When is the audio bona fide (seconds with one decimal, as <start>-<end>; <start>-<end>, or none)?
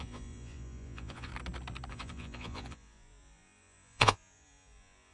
1.3-1.9